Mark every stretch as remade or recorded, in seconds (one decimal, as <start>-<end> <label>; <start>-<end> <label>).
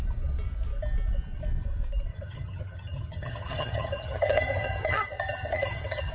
0.0-2.1 recorded; 2.1-6.1 remade